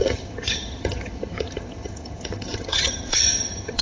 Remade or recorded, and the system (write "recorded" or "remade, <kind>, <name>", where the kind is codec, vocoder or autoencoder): remade, vocoder, HiFi-GAN